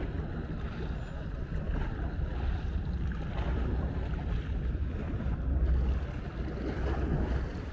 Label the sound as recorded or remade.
recorded